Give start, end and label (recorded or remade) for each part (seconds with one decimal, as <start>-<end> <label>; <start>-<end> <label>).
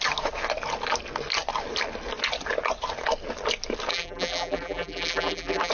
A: 0.0-3.9 recorded; 3.9-5.7 remade